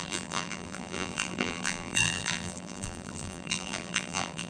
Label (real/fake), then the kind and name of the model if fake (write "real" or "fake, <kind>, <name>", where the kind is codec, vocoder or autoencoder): fake, vocoder, BigVGAN v2